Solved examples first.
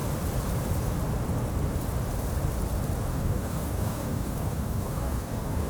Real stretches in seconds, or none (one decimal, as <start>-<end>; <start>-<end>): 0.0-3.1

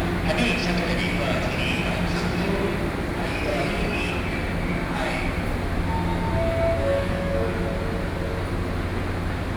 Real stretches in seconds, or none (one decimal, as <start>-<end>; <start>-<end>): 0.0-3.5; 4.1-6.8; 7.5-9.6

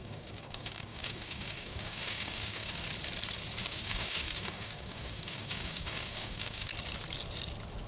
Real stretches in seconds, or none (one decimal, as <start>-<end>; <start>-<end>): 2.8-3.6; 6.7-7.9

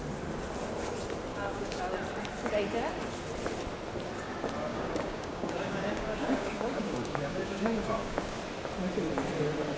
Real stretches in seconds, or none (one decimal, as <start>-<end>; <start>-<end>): 0.0-1.3; 1.8-4.7; 8.4-9.8